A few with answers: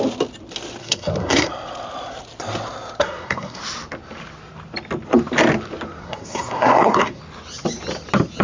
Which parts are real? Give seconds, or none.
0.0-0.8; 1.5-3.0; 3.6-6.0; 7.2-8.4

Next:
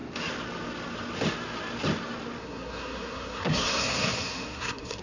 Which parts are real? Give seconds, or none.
0.0-2.4